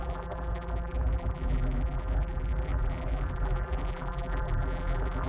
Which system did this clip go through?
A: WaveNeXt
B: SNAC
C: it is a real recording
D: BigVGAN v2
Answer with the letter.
D